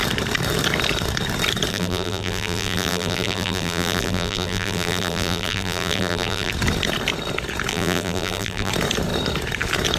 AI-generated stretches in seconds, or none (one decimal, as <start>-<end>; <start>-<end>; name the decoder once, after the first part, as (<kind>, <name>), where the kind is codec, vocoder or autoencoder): 1.7-6.5 (vocoder, BigVGAN v2); 7.7-8.7